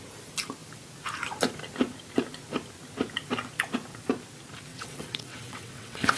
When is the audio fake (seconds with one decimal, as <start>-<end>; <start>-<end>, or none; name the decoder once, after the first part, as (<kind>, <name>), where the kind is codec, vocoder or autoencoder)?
4.7-6.2 (vocoder, WaveNeXt)